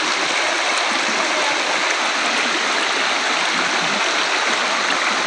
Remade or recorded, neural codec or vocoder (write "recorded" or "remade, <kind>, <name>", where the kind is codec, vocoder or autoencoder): recorded